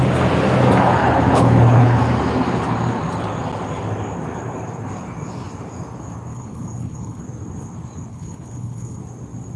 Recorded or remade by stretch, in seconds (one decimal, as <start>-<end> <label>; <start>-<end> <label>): 0.0-1.0 recorded; 1.0-2.0 remade; 2.0-6.3 recorded; 6.3-7.2 remade; 7.2-8.1 recorded; 8.1-9.0 remade; 9.0-9.6 recorded